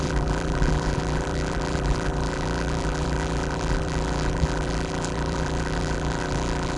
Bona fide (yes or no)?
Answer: no